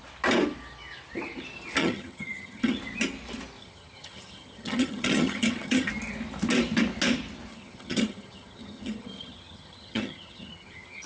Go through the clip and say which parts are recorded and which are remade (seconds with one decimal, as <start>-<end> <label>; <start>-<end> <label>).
0.0-1.8 recorded; 1.8-2.8 remade; 2.8-3.6 recorded; 3.6-5.9 remade; 5.9-7.5 recorded; 7.5-11.1 remade

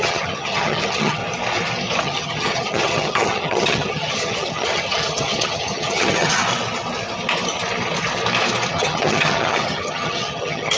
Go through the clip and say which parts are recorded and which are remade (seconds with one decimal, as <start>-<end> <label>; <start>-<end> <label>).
0.0-1.2 remade; 1.2-2.0 recorded; 2.0-6.4 remade; 6.4-8.7 recorded; 8.7-10.8 remade

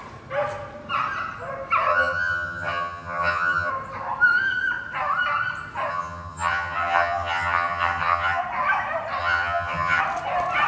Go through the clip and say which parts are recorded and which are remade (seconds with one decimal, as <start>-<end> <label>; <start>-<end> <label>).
0.0-1.9 recorded; 1.9-3.7 remade; 3.7-5.9 recorded; 5.9-8.4 remade; 8.4-9.2 recorded; 9.2-10.0 remade; 10.0-10.7 recorded

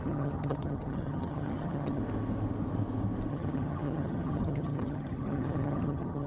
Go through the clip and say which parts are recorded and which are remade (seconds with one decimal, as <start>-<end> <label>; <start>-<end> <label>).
0.0-2.0 remade; 2.0-3.3 recorded; 3.3-6.3 remade

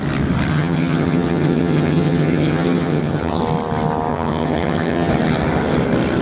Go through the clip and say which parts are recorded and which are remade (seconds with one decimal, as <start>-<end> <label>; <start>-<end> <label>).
0.0-0.5 recorded; 0.5-3.4 remade; 3.4-4.1 recorded; 4.1-5.1 remade; 5.1-6.2 recorded

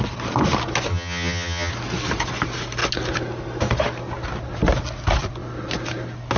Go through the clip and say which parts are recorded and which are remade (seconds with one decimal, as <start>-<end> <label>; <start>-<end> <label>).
0.0-0.9 recorded; 0.9-1.7 remade; 1.7-6.4 recorded

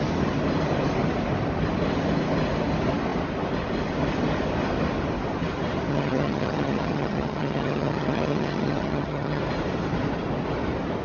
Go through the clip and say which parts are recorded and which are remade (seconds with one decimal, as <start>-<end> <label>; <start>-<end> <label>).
0.0-5.9 recorded; 5.9-9.4 remade; 9.4-11.0 recorded